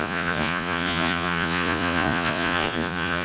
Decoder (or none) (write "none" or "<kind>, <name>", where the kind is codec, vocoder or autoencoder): vocoder, Vocos